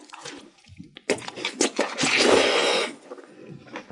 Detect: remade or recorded remade